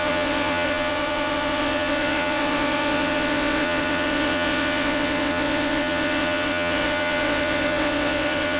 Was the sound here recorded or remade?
remade